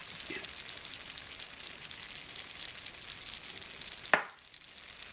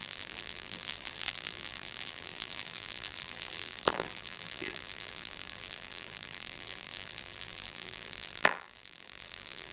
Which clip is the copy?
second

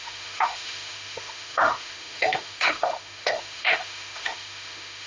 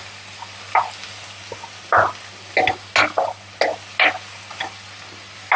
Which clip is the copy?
first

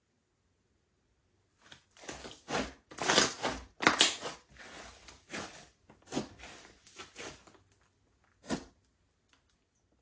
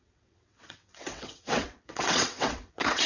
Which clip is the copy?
second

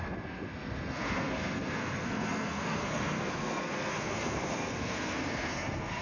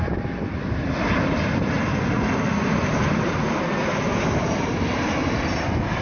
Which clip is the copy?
first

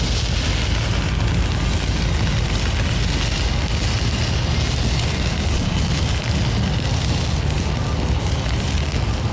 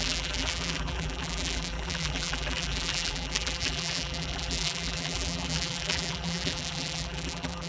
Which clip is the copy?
second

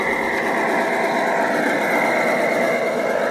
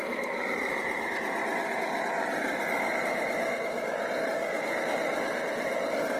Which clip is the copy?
second